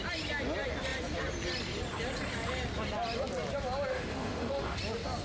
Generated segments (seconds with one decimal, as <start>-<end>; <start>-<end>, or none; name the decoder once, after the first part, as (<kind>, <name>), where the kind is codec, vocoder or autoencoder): 3.9-4.8 (autoencoder, DAC-VAE)

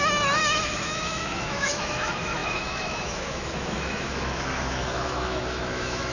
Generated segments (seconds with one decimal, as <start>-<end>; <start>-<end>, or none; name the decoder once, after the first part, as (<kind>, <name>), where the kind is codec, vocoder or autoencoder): 0.0-6.1 (autoencoder, DAC-VAE)

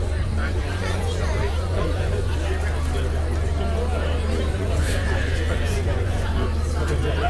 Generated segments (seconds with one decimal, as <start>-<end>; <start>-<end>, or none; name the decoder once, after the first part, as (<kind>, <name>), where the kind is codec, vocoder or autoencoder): 0.0-2.3 (vocoder, Vocos); 4.5-6.5